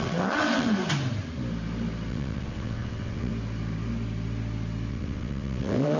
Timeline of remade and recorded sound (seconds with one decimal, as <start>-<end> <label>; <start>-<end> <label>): 0.0-0.8 remade; 0.8-2.1 recorded; 2.1-3.3 remade; 3.3-4.9 recorded; 4.9-6.0 remade